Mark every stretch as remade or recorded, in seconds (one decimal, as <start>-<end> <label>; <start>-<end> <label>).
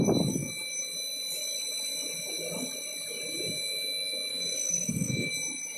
0.0-4.3 recorded; 4.3-5.3 remade; 5.3-5.8 recorded